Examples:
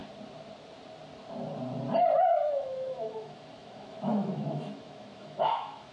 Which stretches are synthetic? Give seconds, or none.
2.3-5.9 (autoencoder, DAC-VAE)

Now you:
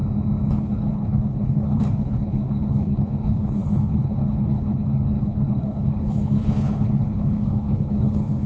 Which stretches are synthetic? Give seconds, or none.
0.5-8.5 (codec, HILCodec)

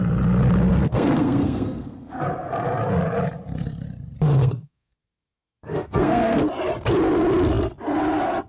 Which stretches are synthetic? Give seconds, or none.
0.6-2.5 (codec, SNAC); 4.4-6.4

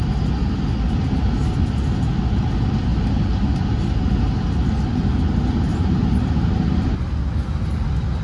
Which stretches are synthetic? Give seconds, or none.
5.7-6.8 (vocoder, BigVGAN v2)